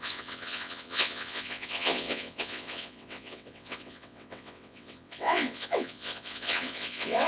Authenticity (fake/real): fake